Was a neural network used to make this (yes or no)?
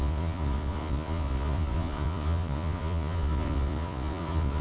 yes